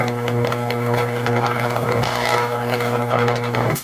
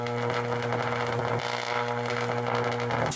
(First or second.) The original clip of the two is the second